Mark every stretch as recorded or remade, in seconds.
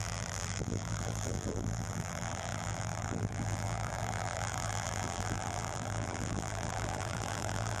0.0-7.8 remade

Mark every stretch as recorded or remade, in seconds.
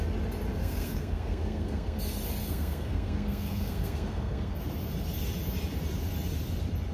0.0-0.5 recorded; 0.5-2.0 remade; 2.0-2.4 recorded; 2.4-4.6 remade; 4.6-6.9 recorded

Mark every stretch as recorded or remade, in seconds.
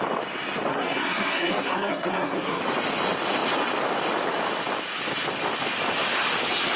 0.0-0.7 recorded; 0.7-2.6 remade; 2.6-6.8 recorded